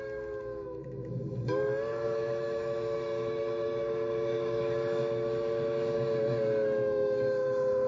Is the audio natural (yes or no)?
no